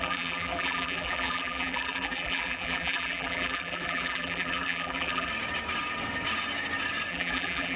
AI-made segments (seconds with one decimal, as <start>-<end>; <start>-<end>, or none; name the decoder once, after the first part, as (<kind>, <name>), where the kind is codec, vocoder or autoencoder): 0.0-5.3 (vocoder, BigVGAN v2); 7.1-7.8